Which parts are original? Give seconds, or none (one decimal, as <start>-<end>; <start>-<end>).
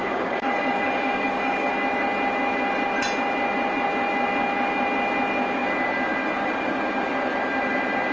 1.7-8.1